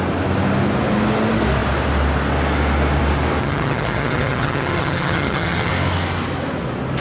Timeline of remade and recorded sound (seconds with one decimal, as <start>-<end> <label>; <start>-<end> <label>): 0.0-3.4 recorded; 3.4-5.7 remade; 5.7-7.0 recorded